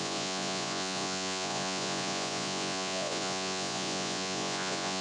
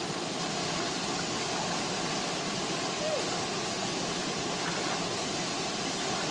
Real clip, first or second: second